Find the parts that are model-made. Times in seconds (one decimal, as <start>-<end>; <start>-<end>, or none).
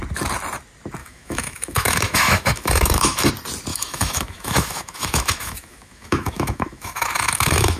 1.0-3.3; 3.7-7.8